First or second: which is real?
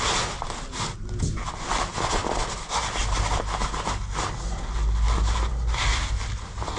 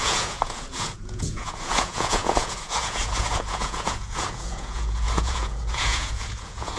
first